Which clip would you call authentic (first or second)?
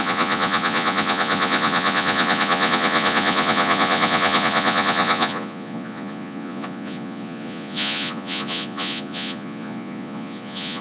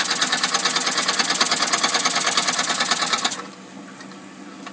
second